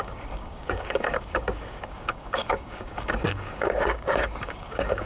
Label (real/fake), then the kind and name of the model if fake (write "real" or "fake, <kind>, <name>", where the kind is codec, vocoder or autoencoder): fake, codec, DAC